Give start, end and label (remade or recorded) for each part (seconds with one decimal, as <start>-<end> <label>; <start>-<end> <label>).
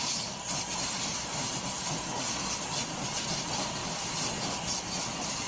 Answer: 0.0-3.8 recorded; 3.8-4.7 remade; 4.7-5.5 recorded